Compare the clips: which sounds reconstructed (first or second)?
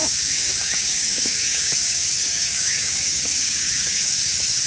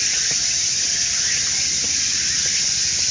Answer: first